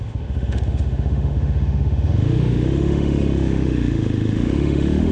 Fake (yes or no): yes